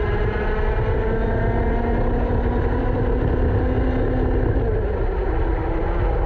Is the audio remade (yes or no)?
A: no